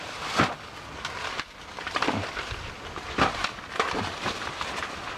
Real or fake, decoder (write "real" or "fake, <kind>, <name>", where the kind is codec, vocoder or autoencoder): real